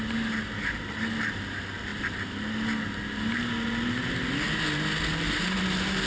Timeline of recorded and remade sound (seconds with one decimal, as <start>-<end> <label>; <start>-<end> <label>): 0.0-6.1 recorded